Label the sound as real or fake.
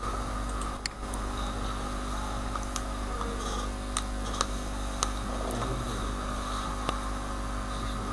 real